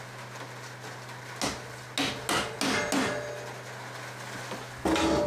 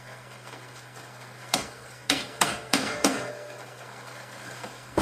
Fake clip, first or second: second